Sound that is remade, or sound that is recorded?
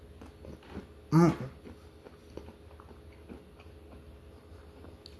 recorded